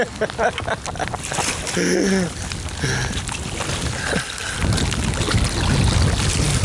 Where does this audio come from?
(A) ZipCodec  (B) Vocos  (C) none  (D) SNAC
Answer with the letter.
C